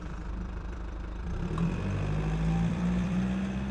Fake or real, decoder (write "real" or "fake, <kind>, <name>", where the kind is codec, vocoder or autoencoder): fake, vocoder, BigVGAN v2